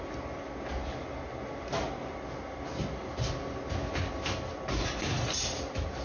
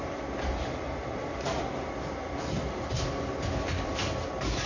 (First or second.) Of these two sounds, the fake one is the second